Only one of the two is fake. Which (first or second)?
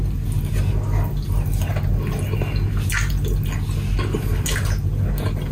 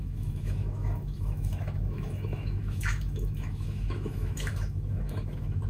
second